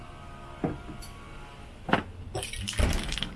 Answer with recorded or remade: recorded